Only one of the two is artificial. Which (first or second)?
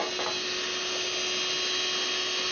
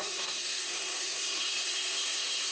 second